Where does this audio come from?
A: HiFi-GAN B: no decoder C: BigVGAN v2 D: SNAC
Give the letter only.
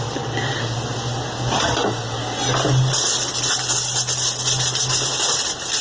B